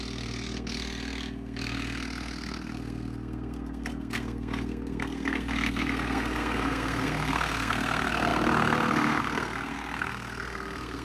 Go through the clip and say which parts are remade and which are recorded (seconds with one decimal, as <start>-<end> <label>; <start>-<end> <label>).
0.0-11.0 remade